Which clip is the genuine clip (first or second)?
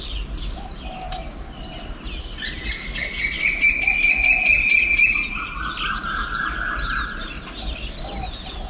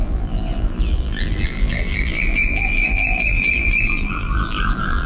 first